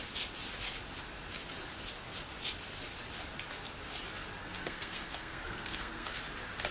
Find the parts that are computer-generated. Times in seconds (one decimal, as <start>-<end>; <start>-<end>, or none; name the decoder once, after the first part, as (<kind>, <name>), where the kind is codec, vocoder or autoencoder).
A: 4.4-6.2 (codec, SNAC)